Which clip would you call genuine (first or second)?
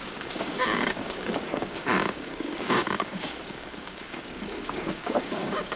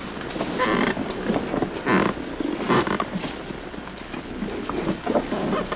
second